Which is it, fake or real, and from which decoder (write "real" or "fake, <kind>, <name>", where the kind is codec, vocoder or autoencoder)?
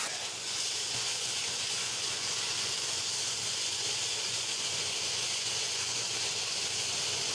fake, vocoder, Vocos